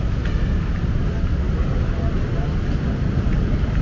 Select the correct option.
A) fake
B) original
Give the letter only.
B